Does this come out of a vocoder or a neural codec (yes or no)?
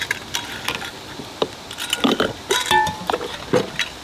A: no